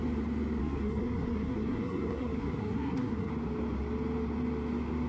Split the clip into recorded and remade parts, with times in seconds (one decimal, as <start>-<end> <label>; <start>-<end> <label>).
0.0-0.6 recorded; 0.6-3.3 remade; 3.3-5.1 recorded